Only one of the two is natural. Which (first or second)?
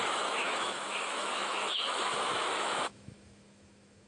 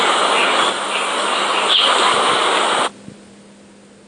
second